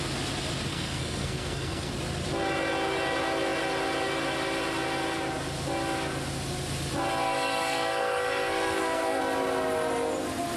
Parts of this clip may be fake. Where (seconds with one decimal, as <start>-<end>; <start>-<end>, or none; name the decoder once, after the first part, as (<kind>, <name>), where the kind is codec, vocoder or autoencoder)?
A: 0.7-1.9 (codec, SNAC); 7.2-9.2